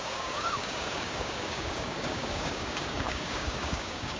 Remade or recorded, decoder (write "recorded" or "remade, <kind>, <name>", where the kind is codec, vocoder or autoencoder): remade, codec, DAC